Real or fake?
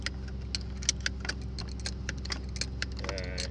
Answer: real